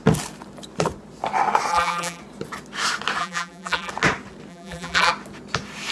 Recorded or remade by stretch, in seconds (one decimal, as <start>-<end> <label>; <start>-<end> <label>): 0.0-1.7 recorded; 1.7-2.2 remade; 2.2-3.2 recorded; 3.2-3.9 remade; 3.9-4.5 recorded; 4.5-5.1 remade; 5.1-5.9 recorded

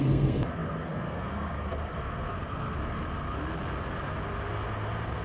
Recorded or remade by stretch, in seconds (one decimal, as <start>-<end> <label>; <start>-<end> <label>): 0.0-2.8 remade; 2.8-4.5 recorded; 4.5-5.2 remade

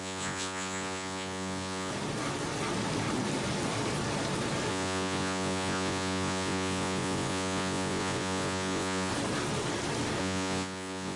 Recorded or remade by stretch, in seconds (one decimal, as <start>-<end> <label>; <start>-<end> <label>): 0.0-1.9 remade; 1.9-4.7 recorded; 4.7-9.1 remade; 9.1-10.2 recorded; 10.2-11.2 remade

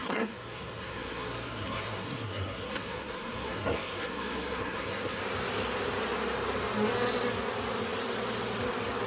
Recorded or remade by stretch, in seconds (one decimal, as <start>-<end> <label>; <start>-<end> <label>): 0.0-5.2 remade; 5.2-9.1 recorded

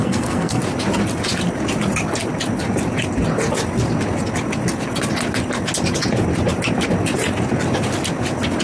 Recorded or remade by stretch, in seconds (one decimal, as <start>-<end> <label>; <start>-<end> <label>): 0.0-0.6 remade; 0.6-8.6 recorded